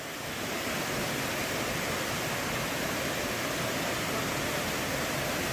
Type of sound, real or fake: real